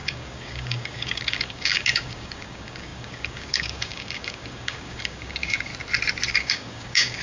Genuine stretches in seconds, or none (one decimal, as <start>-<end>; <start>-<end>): 5.7-6.3